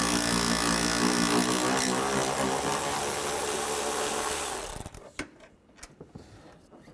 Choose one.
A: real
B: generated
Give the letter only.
A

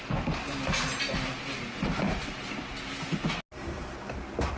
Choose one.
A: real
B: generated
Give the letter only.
A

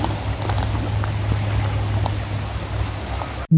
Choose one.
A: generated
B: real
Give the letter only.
B